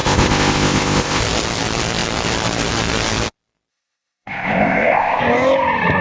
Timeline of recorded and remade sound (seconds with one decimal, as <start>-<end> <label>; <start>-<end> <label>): 0.0-1.2 remade; 1.2-3.7 recorded; 3.7-5.2 remade; 5.2-6.0 recorded